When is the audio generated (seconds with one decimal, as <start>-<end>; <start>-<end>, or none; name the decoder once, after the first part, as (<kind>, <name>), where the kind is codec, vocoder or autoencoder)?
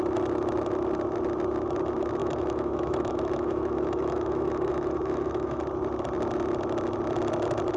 2.2-5.6 (autoencoder, DAC-VAE)